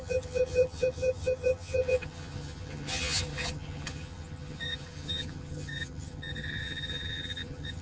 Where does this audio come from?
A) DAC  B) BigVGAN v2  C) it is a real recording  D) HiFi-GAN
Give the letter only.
D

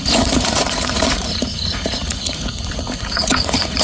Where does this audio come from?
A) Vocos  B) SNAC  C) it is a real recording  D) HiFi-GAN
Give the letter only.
A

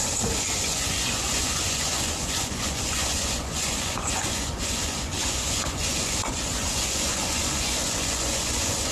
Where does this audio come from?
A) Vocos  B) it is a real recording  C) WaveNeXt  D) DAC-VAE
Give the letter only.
A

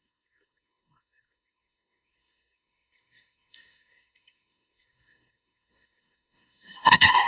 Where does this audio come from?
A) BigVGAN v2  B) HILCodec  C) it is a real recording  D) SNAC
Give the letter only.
D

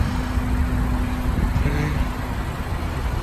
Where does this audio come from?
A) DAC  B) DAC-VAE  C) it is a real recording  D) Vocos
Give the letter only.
C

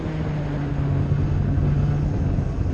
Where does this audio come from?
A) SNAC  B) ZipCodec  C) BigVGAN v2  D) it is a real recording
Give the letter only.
D